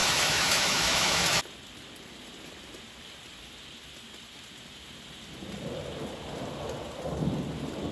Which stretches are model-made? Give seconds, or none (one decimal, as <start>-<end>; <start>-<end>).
0.0-1.4